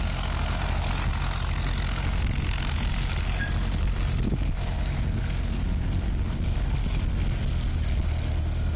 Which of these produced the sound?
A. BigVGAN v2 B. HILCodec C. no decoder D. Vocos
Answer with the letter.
C